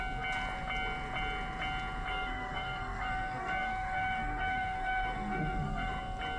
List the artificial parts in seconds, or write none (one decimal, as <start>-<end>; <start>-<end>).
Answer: 2.1-5.9